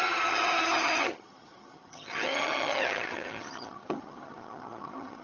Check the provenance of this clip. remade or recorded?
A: remade